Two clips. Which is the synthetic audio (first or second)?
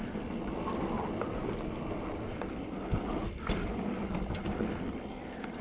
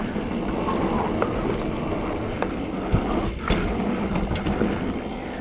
first